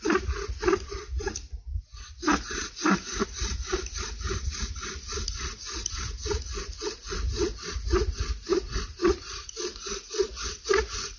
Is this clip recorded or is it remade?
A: recorded